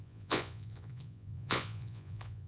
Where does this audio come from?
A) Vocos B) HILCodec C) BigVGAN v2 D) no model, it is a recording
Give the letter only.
A